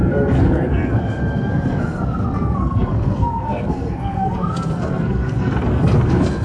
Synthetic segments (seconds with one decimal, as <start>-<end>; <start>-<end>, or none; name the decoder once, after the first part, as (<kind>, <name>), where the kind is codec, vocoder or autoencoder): 0.0-6.4 (codec, SNAC)